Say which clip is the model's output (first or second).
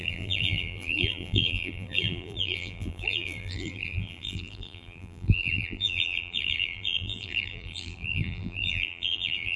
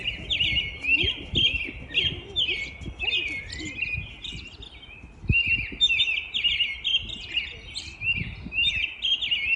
first